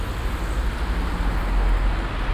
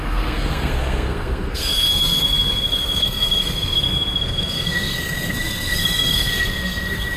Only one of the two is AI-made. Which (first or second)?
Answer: second